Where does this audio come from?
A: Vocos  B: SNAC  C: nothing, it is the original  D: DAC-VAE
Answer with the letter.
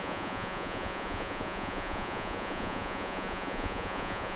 A